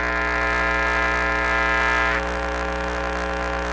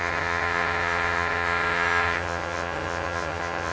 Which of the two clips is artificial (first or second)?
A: second